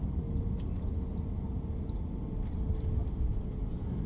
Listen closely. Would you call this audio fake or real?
real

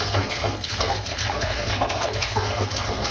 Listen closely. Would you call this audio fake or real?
fake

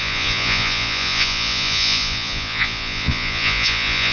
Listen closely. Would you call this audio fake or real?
fake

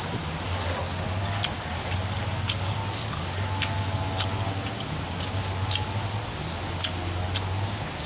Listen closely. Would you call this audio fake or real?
real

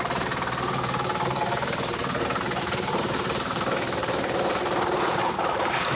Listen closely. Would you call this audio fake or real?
fake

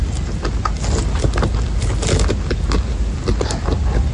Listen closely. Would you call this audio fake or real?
real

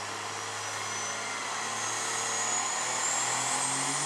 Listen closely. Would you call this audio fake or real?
real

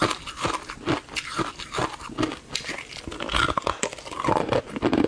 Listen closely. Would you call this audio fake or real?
real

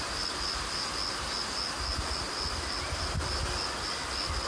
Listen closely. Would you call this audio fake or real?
real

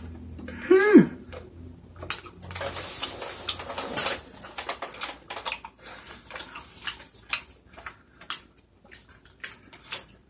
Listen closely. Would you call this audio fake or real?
real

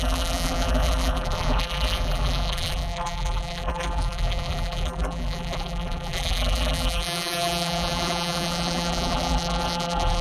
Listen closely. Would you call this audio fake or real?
fake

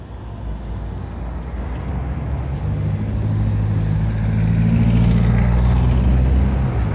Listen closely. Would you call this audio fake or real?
real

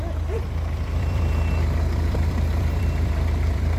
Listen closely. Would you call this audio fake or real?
fake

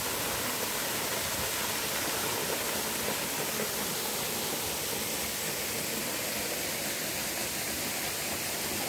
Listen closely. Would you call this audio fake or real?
real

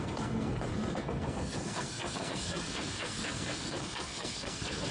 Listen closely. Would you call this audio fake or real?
fake